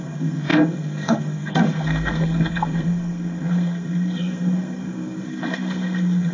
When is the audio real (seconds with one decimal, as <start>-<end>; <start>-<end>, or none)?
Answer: none